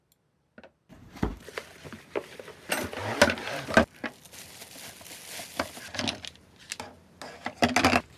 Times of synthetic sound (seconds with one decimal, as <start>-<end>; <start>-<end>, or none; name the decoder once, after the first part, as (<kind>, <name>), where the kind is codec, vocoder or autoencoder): none